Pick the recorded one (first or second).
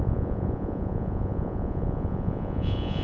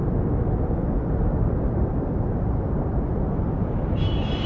second